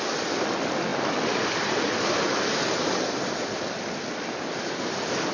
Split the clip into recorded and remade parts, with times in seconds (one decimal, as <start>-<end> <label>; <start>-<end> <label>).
0.0-5.3 recorded